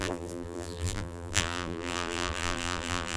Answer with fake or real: fake